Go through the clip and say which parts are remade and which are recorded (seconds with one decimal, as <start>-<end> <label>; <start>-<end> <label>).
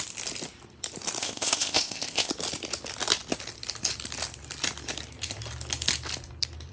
0.0-1.2 recorded; 1.2-2.3 remade; 2.3-6.7 recorded